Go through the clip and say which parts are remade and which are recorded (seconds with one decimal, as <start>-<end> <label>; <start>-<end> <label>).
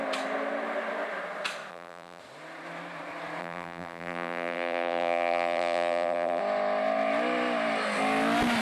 0.0-1.7 recorded; 1.7-2.2 remade; 2.2-3.4 recorded; 3.4-6.4 remade; 6.4-8.6 recorded